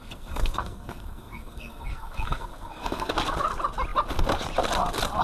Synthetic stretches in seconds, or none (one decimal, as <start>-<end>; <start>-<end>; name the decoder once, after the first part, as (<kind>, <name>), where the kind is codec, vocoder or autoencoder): 0.0-3.1 (codec, SNAC)